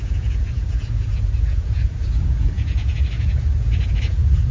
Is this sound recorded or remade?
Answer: remade